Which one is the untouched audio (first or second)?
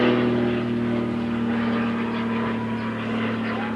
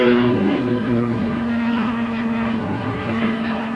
first